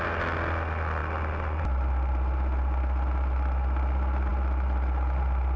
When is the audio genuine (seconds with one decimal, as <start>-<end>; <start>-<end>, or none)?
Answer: 0.0-5.6